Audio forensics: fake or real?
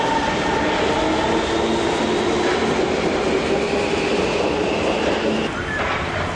real